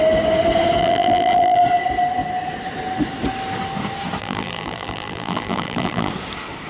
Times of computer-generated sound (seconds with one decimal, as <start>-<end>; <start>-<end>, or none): 0.8-1.6; 4.2-6.1